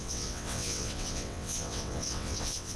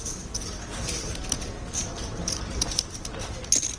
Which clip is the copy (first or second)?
first